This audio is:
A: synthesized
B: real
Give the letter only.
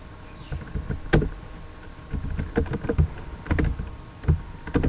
B